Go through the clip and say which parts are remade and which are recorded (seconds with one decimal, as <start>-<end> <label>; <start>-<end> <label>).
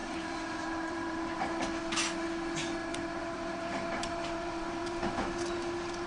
0.0-1.8 remade; 1.8-2.8 recorded; 2.8-5.1 remade; 5.1-6.1 recorded